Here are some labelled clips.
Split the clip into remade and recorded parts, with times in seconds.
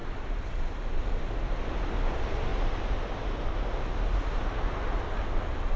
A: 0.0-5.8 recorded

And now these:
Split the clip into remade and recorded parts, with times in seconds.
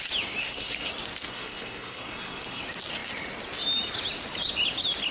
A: 0.0-0.4 recorded; 0.4-0.9 remade; 0.9-1.3 recorded; 1.3-2.6 remade; 2.6-5.1 recorded